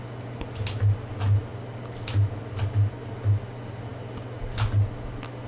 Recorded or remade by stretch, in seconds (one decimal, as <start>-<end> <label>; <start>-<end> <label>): 0.0-5.5 recorded